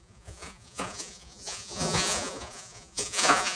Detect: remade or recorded remade